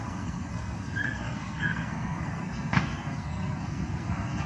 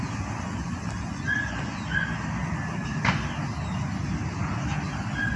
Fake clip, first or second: first